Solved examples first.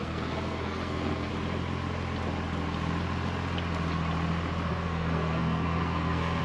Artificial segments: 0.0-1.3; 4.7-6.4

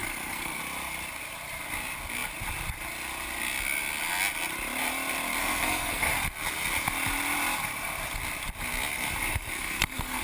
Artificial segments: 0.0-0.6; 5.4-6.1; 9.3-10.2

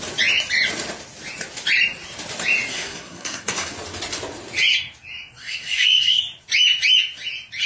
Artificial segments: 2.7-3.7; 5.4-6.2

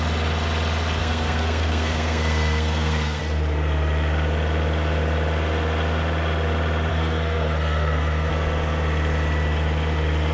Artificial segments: 1.0-3.2; 6.9-8.3

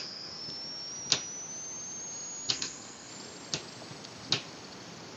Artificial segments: 0.0-0.4; 2.5-3.1

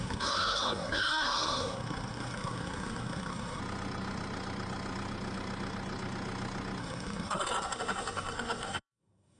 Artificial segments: 0.0-3.6; 6.8-9.4